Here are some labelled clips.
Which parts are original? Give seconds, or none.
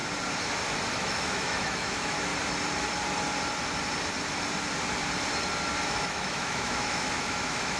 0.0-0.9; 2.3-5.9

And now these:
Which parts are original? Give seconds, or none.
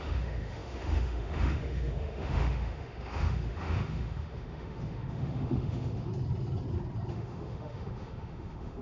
6.1-7.1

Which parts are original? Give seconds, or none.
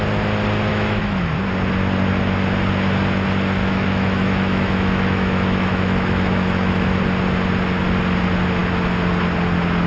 0.0-0.7; 1.3-3.6; 7.0-9.9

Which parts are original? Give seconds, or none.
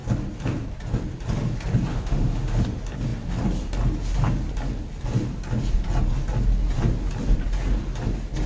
0.0-1.9; 2.6-8.5